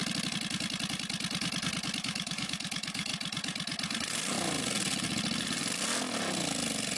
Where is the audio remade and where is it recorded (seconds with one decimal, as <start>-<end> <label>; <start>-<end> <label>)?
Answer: 0.0-2.0 recorded; 2.0-3.1 remade; 3.1-7.0 recorded